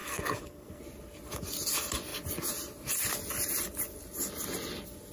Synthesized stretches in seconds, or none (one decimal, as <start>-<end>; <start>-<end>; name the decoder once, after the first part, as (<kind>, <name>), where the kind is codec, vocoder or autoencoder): 0.0-0.8 (codec, SNAC)